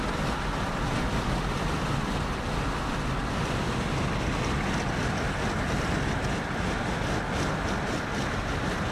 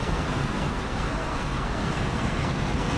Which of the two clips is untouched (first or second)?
first